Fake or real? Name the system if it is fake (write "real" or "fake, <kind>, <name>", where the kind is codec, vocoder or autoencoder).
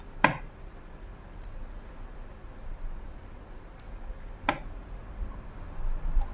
real